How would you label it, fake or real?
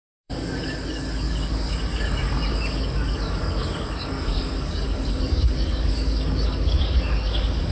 fake